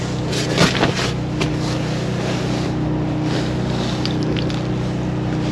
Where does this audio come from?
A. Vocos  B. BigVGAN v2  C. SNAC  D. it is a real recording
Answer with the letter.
D